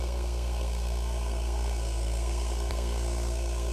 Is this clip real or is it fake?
fake